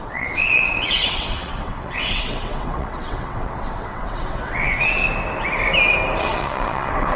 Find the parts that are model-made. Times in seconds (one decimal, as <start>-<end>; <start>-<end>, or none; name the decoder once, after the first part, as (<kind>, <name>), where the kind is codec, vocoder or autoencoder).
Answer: 0.0-5.0 (vocoder, WaveNeXt); 6.2-7.2